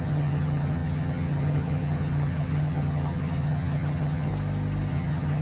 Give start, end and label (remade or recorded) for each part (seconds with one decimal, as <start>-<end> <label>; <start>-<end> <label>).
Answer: 0.0-4.3 remade; 4.3-4.9 recorded; 4.9-5.4 remade